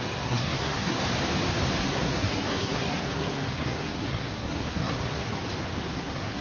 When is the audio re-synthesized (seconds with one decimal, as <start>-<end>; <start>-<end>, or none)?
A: 0.0-1.0; 1.8-5.4; 6.0-6.4